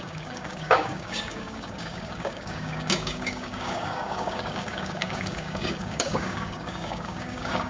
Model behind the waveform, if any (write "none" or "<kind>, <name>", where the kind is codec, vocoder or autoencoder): codec, DAC